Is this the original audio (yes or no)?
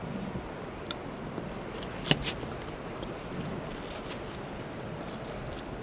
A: yes